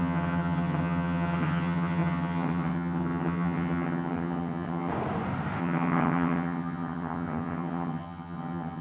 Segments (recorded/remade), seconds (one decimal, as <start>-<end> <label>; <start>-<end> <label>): 0.0-4.9 remade; 4.9-5.6 recorded; 5.6-8.8 remade